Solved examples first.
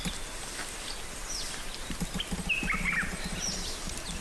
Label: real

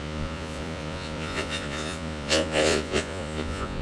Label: fake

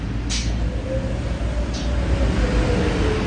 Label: real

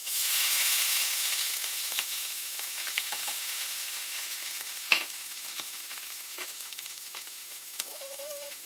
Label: fake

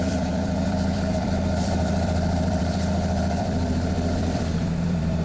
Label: fake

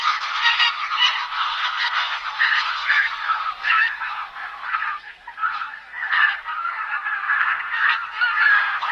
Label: fake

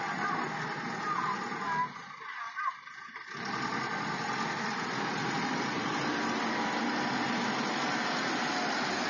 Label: real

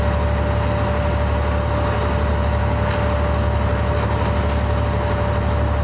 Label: real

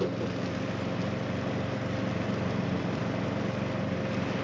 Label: real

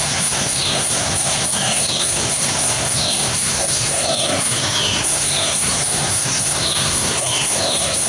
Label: fake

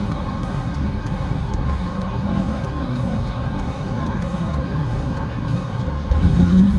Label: fake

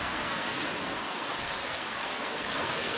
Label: fake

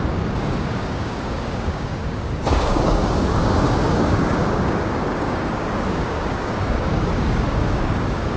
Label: fake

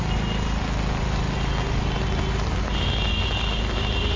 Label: real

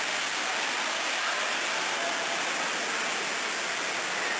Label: real